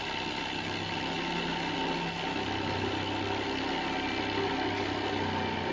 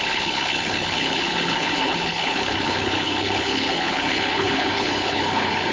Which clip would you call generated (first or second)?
second